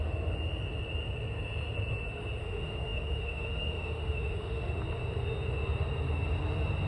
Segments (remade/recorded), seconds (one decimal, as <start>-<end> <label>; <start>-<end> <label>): 0.0-2.4 recorded; 2.4-4.8 remade; 4.8-6.9 recorded